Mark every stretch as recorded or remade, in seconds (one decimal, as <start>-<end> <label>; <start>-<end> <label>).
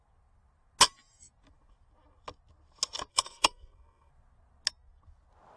0.0-3.1 recorded; 3.1-4.1 remade; 4.1-5.6 recorded